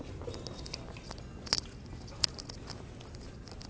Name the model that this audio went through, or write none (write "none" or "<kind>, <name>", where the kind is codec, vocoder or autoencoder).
none